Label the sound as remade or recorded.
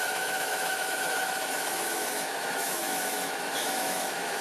remade